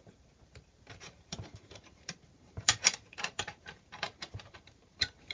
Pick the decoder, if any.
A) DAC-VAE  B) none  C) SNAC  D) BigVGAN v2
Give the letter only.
D